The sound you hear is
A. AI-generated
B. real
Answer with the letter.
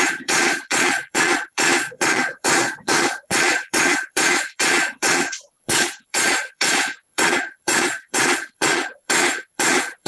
A